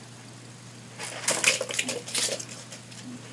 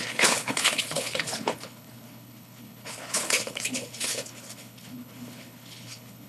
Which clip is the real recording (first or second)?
first